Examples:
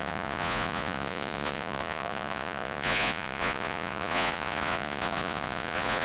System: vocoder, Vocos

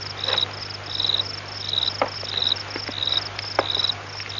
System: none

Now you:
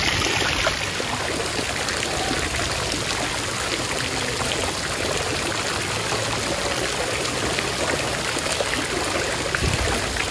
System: none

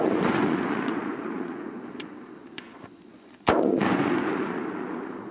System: vocoder, Vocos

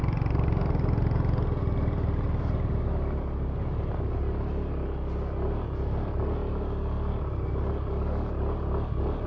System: none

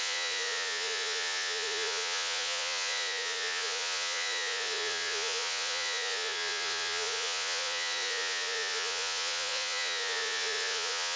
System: vocoder, Vocos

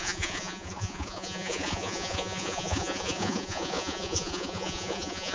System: vocoder, Vocos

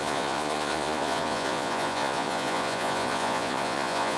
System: vocoder, Vocos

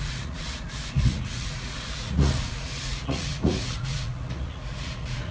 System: vocoder, Vocos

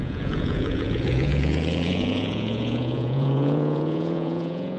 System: vocoder, Vocos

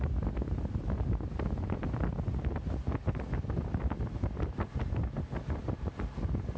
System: none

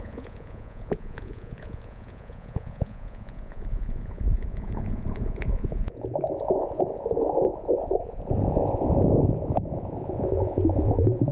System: vocoder, Vocos